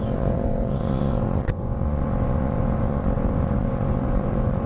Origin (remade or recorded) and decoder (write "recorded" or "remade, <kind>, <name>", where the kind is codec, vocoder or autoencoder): remade, vocoder, Vocos